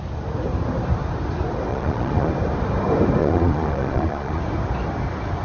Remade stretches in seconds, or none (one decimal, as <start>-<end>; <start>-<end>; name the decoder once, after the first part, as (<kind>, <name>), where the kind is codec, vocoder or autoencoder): 1.7-2.3 (vocoder, Vocos); 3.2-4.4